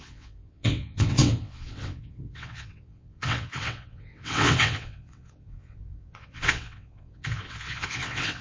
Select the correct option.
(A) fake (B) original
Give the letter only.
A